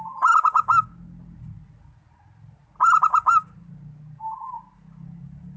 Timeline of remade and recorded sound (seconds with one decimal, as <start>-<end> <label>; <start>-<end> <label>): 0.0-5.6 recorded